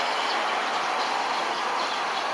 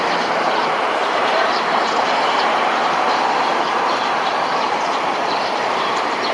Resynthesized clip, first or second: second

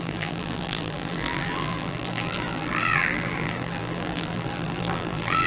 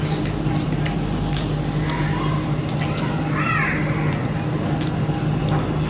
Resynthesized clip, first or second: first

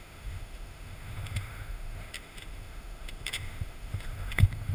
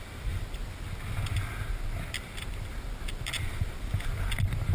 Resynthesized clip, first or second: first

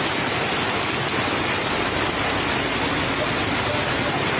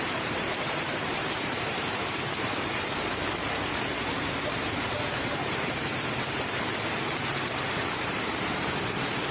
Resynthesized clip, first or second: second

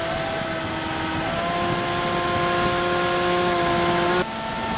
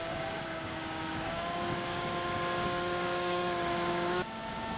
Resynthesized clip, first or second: second